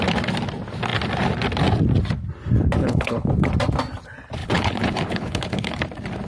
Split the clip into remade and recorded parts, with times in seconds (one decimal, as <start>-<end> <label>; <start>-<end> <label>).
0.0-2.8 recorded; 2.8-3.3 remade; 3.3-4.4 recorded; 4.4-5.8 remade; 5.8-6.3 recorded